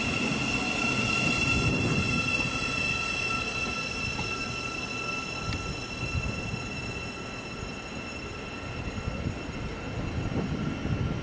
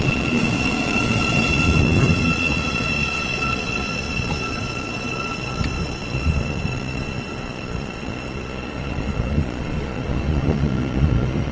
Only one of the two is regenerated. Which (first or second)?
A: second